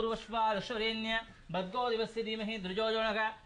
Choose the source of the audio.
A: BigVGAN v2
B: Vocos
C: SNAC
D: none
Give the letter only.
D